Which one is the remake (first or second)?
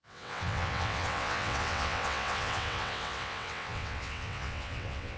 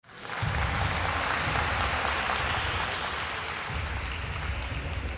first